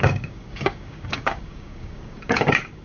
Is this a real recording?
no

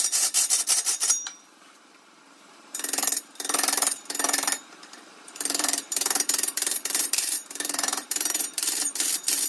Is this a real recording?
no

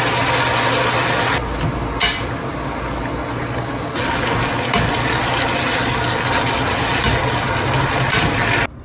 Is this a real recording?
yes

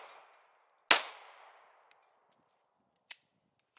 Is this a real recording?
yes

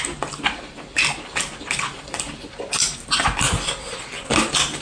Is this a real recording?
yes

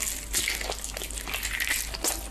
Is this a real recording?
yes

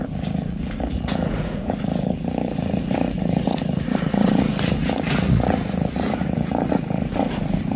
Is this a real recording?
no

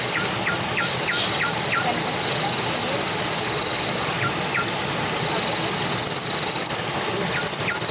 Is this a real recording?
yes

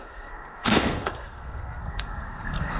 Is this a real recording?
no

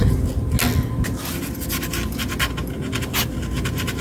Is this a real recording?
yes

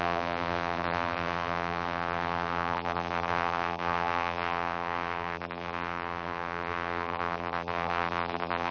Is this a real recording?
no